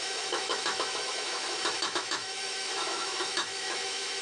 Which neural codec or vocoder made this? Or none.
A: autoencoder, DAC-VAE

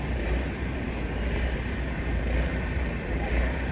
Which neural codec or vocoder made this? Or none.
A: vocoder, BigVGAN v2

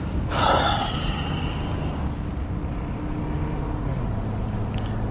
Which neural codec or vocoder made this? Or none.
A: none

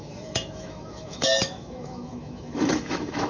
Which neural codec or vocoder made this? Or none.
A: autoencoder, DAC-VAE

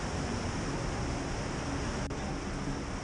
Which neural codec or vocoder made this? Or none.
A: none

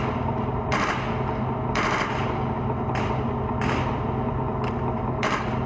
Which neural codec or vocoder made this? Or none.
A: none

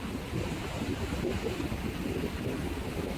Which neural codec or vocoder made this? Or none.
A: none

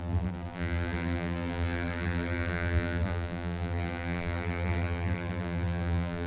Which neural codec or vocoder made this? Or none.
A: vocoder, BigVGAN v2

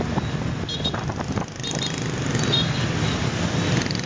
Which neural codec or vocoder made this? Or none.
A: none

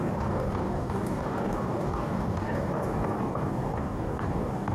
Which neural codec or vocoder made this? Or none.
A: codec, DAC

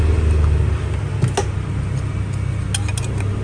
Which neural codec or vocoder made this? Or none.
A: none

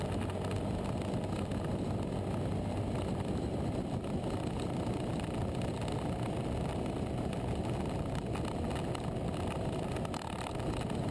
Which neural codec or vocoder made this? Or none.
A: none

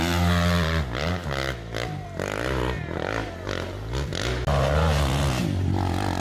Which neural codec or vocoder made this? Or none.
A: none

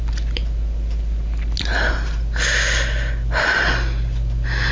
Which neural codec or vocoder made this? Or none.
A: none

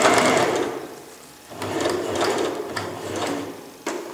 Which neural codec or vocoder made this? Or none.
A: vocoder, BigVGAN v2